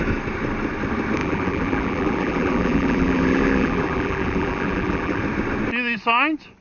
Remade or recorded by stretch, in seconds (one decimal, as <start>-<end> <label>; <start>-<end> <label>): 0.0-1.2 recorded; 1.2-5.2 remade; 5.2-6.6 recorded